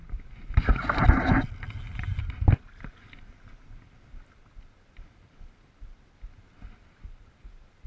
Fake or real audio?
real